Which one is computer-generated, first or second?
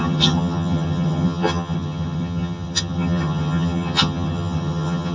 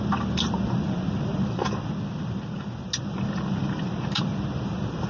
first